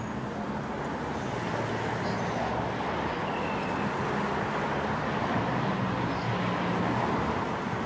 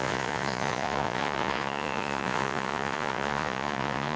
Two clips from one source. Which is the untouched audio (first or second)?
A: first